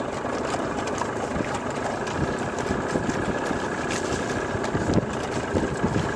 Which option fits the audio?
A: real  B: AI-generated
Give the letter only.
A